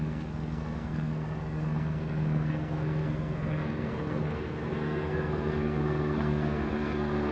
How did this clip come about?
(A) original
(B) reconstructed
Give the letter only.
B